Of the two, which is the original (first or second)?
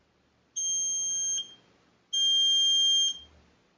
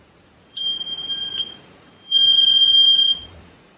first